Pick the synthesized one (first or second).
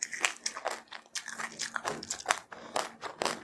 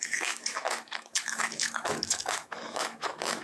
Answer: second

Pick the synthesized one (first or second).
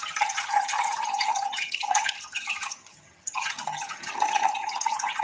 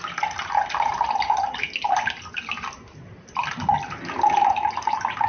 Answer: first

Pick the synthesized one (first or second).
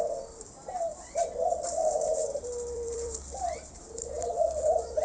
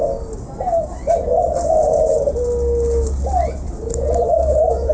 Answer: first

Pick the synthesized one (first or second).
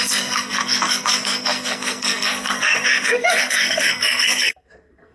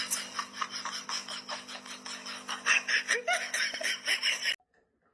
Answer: first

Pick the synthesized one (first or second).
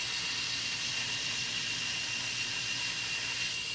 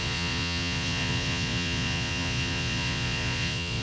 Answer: second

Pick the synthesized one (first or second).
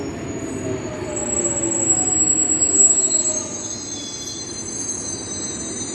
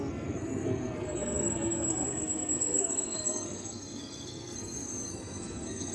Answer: second